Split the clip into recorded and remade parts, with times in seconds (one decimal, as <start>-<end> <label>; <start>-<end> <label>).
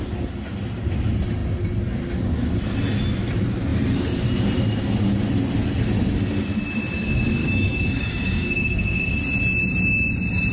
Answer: 0.0-7.4 recorded; 7.4-9.1 remade; 9.1-10.5 recorded